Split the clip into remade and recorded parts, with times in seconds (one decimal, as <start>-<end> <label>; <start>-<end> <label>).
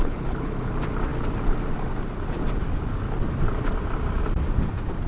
0.0-0.7 remade; 0.7-5.1 recorded